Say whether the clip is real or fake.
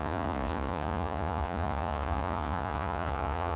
fake